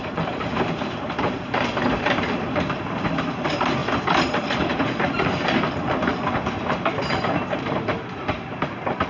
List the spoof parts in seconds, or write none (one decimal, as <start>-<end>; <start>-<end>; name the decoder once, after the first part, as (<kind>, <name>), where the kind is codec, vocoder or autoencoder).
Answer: 0.0-3.8 (vocoder, BigVGAN v2); 4.3-6.1; 6.6-9.1